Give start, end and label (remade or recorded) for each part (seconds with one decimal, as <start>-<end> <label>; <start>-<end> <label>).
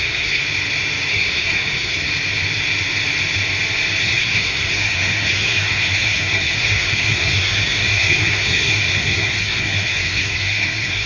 0.0-0.4 remade; 0.4-1.1 recorded; 1.1-2.1 remade; 2.1-4.0 recorded; 4.0-11.1 remade